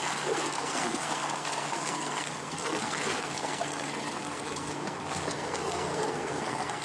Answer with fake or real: fake